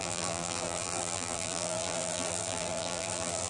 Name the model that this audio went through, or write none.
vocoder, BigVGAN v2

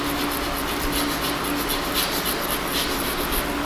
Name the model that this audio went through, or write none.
none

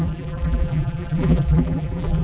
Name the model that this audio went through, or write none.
vocoder, BigVGAN v2